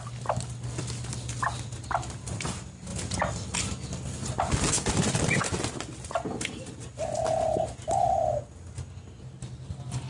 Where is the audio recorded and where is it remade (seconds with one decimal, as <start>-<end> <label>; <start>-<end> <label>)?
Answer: 0.0-10.1 recorded

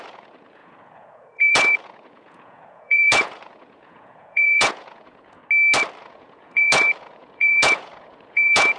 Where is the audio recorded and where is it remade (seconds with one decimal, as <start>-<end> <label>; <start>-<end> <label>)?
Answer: 0.0-5.4 remade; 5.4-6.0 recorded; 6.0-8.8 remade

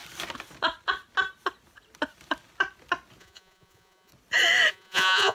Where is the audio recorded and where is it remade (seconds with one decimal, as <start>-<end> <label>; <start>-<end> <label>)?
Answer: 0.0-3.2 recorded; 3.2-4.1 remade; 4.1-4.7 recorded; 4.7-5.3 remade